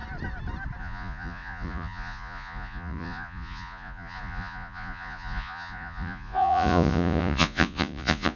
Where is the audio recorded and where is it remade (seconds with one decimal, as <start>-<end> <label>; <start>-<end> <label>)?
0.0-0.8 recorded; 0.8-8.4 remade